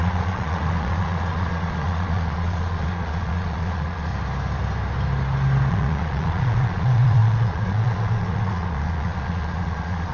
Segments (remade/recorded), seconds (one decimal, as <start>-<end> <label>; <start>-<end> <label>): 0.0-4.1 remade; 4.1-5.7 recorded; 5.7-10.1 remade